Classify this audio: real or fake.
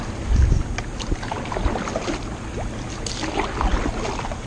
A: real